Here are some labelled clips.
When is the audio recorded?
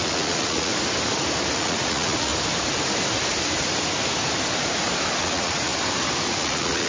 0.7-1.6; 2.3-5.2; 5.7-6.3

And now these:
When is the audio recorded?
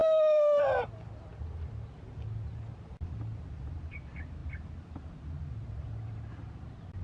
0.6-7.0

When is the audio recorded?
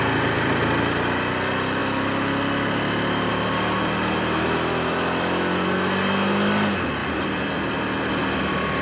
0.0-7.0; 8.1-8.8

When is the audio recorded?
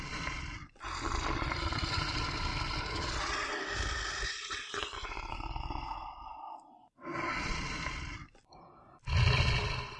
0.0-10.0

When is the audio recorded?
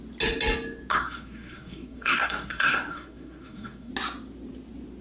0.0-0.9; 3.9-5.0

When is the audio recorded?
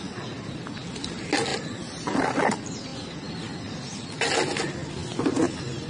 0.0-1.5; 2.5-5.9